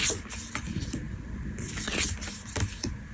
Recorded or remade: recorded